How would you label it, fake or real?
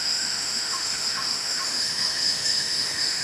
fake